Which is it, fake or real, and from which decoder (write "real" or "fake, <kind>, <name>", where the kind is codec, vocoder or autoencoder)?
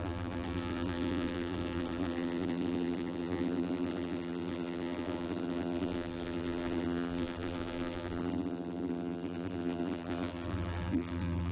fake, vocoder, BigVGAN v2